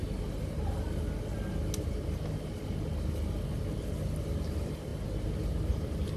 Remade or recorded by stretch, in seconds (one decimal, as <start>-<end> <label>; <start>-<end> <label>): 0.0-6.2 recorded